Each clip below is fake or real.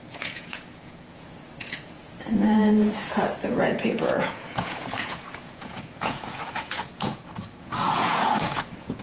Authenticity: fake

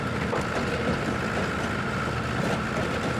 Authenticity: real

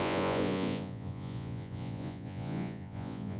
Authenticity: fake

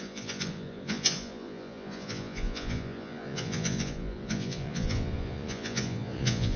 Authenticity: fake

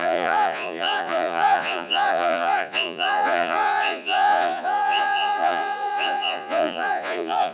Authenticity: fake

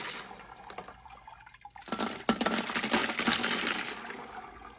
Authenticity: real